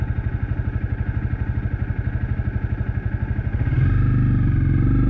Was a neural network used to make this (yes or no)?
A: no